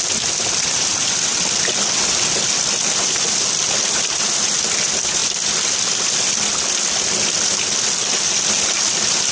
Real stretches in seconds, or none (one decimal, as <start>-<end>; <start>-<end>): 0.0-9.3